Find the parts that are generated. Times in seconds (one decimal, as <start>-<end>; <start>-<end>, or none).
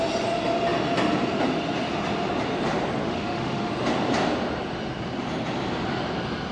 3.0-3.7